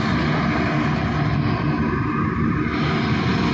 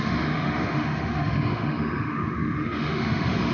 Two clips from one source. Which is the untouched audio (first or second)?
first